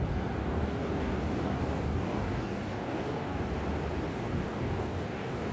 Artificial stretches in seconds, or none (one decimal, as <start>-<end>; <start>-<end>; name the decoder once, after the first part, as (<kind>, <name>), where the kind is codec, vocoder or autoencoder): 0.4-3.4 (codec, DAC); 4.1-5.5